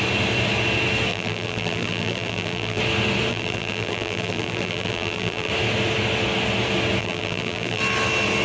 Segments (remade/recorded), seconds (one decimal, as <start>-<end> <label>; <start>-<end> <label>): 0.0-1.1 recorded; 1.1-2.8 remade; 2.8-3.3 recorded; 3.3-5.5 remade; 5.5-7.0 recorded; 7.0-7.8 remade; 7.8-8.4 recorded